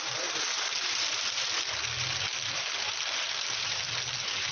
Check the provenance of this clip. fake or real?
real